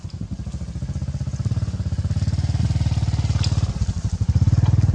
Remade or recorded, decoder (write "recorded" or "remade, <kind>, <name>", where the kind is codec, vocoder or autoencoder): recorded